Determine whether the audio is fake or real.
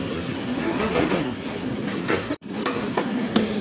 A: fake